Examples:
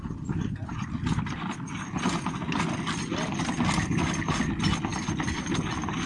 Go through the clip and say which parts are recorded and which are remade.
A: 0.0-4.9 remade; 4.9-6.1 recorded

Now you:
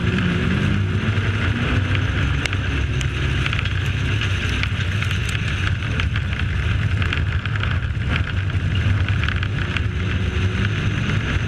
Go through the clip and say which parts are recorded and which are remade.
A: 0.0-0.7 remade; 0.7-11.5 recorded